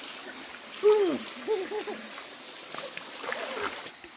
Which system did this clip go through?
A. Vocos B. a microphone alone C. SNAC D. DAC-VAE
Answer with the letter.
B